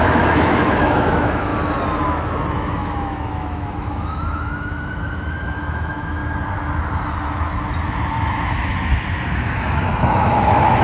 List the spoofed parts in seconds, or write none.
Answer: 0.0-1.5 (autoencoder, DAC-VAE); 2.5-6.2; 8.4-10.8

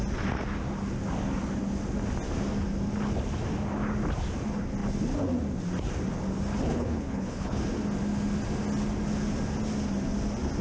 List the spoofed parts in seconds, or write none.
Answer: 6.7-7.6 (codec, HILCodec)

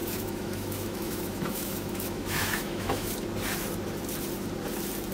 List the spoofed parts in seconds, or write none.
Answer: 0.0-3.1 (autoencoder, DAC-VAE)

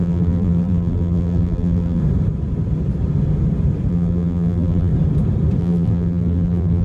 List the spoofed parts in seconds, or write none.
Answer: 0.0-2.0 (vocoder, BigVGAN v2); 3.9-4.9; 5.6-6.8

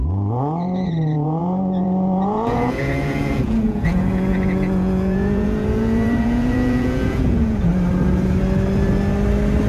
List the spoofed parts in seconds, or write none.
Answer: 0.0-7.7 (vocoder, Vocos)

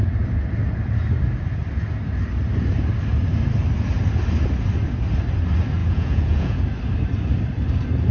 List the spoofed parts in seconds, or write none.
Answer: 5.8-6.6 (vocoder, Vocos)

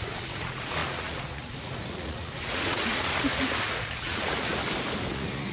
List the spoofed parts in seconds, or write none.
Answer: 0.0-4.5 (vocoder, Vocos); 5.1-5.5

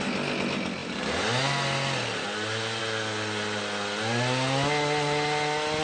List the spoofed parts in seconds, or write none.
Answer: none